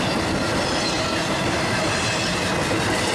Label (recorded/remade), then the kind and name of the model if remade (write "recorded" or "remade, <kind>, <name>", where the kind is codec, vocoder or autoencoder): recorded